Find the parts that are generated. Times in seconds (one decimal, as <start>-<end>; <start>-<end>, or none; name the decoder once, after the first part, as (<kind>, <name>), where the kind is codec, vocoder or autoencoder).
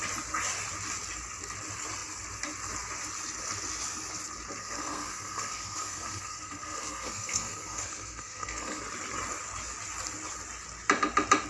4.6-8.8 (codec, SNAC)